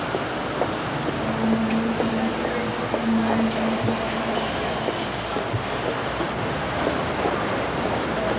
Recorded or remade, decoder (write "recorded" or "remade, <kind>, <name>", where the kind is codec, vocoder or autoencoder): recorded